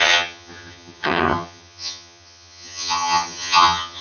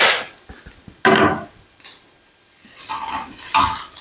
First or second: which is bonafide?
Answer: second